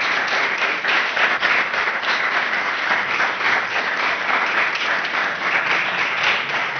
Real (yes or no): yes